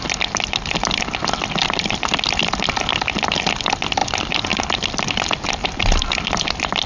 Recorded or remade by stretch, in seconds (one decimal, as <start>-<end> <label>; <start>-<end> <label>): 0.0-6.9 recorded